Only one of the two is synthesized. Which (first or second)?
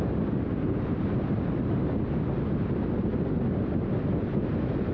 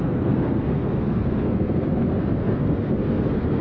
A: second